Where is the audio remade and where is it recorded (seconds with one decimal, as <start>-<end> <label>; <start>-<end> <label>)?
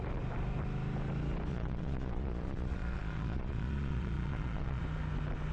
0.0-1.5 recorded; 1.5-4.8 remade; 4.8-5.5 recorded